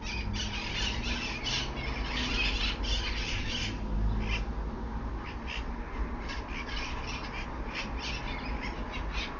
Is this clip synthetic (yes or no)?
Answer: no